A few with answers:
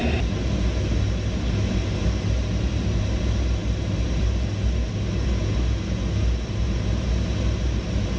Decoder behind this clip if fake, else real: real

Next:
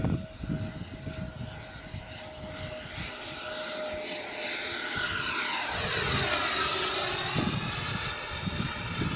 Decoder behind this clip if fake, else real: real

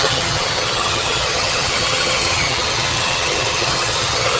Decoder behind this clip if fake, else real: fake, vocoder, HiFi-GAN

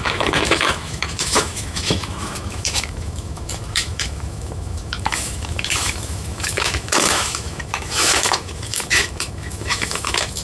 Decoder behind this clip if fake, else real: fake, autoencoder, DAC-VAE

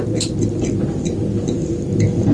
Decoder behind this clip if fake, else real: real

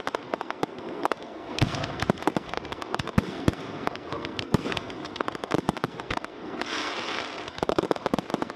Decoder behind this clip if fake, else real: fake, codec, SNAC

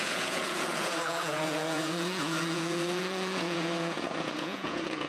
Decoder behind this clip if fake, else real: fake, vocoder, Vocos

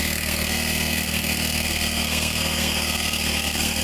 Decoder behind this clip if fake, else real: fake, codec, SNAC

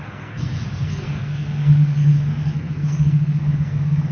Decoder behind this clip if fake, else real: fake, codec, SNAC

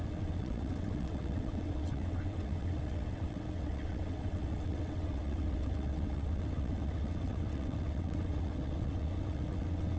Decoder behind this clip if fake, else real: fake, vocoder, WaveNeXt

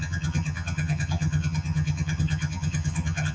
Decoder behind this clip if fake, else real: fake, vocoder, HiFi-GAN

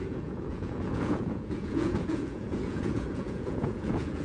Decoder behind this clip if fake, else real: fake, vocoder, Vocos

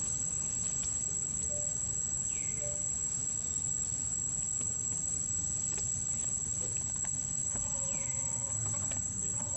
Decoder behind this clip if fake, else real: real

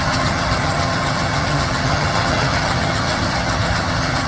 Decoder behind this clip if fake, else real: fake, vocoder, HiFi-GAN